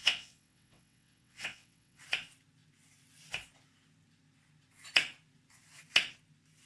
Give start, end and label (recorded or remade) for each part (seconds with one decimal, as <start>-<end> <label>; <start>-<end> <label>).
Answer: 0.0-2.0 remade; 2.0-6.7 recorded